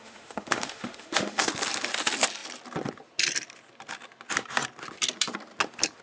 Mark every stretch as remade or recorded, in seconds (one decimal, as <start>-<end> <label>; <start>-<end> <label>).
0.0-1.5 remade; 1.5-6.0 recorded